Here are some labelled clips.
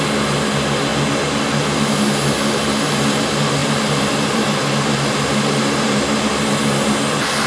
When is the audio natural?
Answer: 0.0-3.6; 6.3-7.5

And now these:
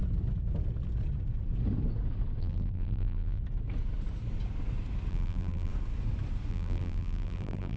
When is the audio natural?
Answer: 0.0-2.4; 3.4-5.1; 5.7-6.5

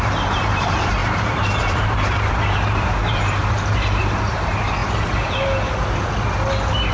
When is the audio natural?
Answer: 4.8-6.9

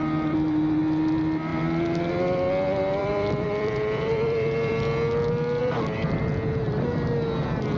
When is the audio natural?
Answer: 0.0-3.0; 4.7-5.6; 6.2-7.8

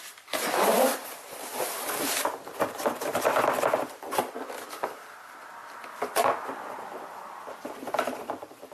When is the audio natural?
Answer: 3.1-4.1; 5.6-6.7

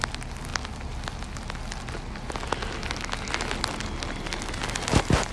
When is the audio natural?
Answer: 0.0-5.3

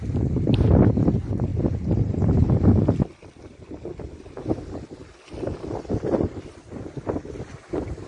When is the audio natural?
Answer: 0.0-1.5; 4.4-8.1

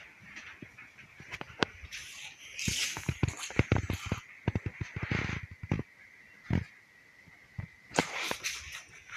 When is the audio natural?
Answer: 0.4-1.0; 2.0-6.8